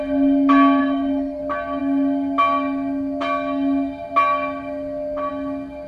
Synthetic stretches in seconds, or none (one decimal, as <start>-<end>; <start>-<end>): 0.8-1.4